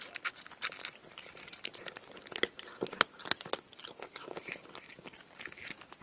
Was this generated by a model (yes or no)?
no